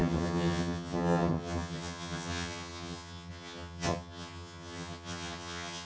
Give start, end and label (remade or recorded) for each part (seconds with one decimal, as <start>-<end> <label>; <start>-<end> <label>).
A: 0.0-5.8 remade